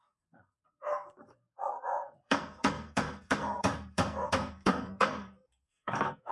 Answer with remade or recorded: remade